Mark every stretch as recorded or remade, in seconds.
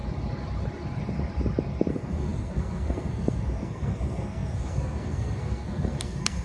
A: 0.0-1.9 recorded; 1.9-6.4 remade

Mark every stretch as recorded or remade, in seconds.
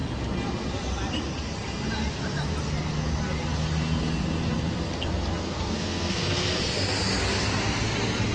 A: 0.0-5.4 recorded; 5.4-6.6 remade; 6.6-8.3 recorded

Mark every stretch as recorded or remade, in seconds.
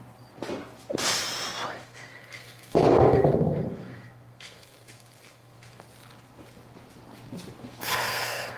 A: 0.0-1.8 recorded; 1.8-5.8 remade; 5.8-7.6 recorded; 7.6-8.6 remade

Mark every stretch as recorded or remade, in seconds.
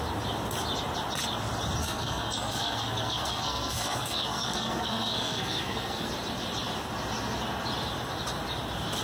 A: 0.0-1.8 recorded; 1.8-6.1 remade; 6.1-9.0 recorded